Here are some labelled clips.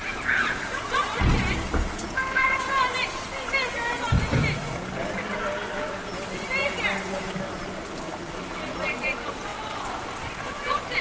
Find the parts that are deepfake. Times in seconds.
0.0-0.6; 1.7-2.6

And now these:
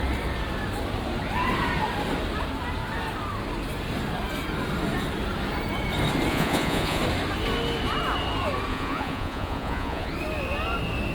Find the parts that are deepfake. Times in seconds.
6.3-7.0; 8.7-10.1